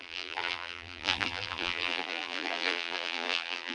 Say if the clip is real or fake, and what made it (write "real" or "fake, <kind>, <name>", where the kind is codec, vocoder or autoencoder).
fake, vocoder, BigVGAN v2